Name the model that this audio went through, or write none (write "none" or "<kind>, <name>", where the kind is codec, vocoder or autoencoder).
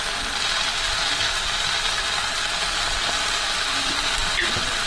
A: none